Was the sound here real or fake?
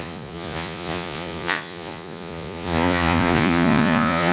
fake